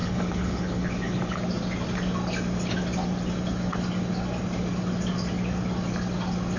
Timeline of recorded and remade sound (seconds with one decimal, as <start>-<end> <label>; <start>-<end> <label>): 0.0-1.4 remade; 1.4-6.6 recorded